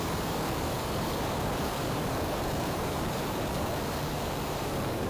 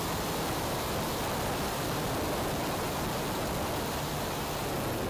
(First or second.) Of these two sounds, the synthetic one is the first